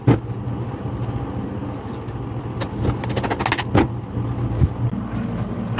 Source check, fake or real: real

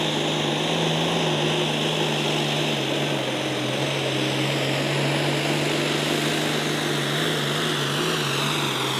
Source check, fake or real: real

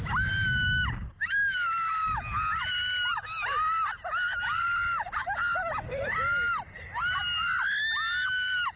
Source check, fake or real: real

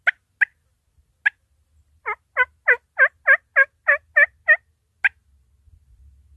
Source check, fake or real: real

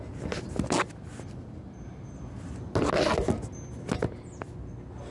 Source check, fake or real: real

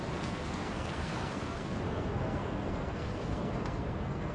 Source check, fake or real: fake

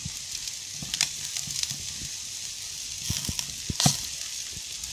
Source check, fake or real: real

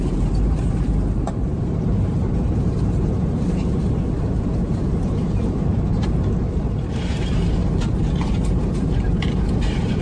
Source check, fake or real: fake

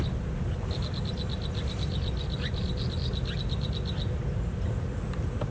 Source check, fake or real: real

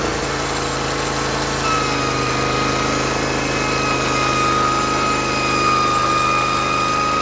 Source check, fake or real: real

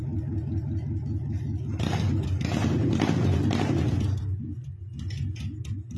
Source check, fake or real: real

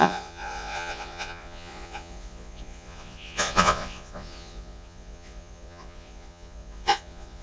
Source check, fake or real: fake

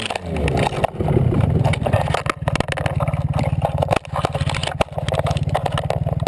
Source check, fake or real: real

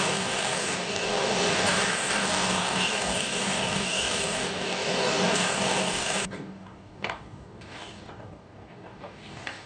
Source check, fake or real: fake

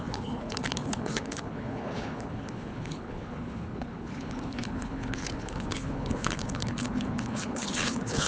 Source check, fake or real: fake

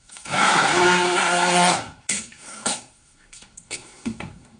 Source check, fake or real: fake